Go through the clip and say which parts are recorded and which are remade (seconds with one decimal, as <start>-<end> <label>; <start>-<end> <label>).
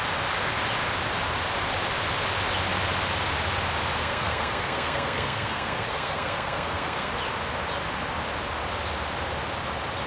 0.0-4.0 recorded; 4.0-7.1 remade; 7.1-10.1 recorded